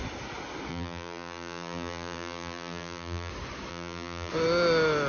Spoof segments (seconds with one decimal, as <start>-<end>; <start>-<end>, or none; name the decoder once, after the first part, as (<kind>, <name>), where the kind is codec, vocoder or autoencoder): 0.7-3.3 (vocoder, BigVGAN v2); 3.7-4.3